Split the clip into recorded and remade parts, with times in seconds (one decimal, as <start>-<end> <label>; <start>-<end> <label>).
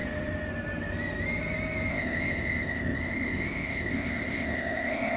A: 0.0-1.9 recorded; 1.9-5.2 remade